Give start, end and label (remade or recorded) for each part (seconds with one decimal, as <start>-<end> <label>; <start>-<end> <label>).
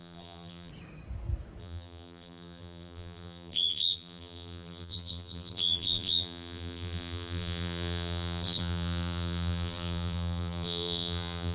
0.0-0.7 remade; 0.7-1.6 recorded; 1.6-11.5 remade